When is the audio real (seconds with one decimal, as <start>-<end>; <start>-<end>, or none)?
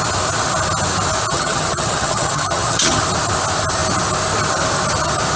0.0-1.3; 3.0-5.4